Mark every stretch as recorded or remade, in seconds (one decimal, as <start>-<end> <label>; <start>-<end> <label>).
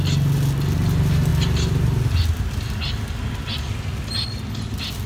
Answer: 0.0-5.1 recorded